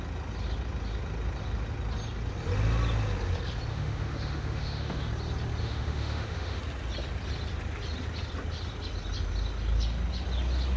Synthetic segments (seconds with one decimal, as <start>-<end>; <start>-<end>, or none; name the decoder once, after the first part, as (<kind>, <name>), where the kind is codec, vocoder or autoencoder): 3.7-5.1 (autoencoder, DAC-VAE); 5.6-6.6